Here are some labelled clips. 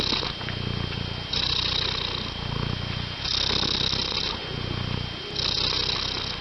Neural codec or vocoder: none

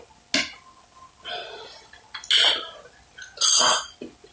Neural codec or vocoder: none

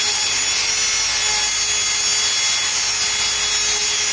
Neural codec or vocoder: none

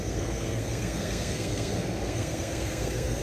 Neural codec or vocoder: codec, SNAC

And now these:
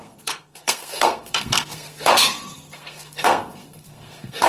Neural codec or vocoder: codec, SNAC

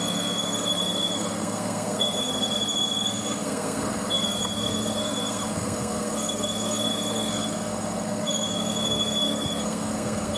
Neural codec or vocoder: codec, SNAC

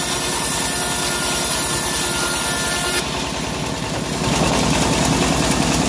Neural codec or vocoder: none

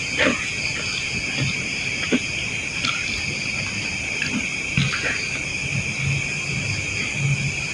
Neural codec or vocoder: none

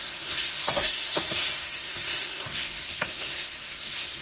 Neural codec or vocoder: codec, SNAC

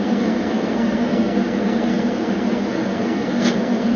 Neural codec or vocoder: codec, SNAC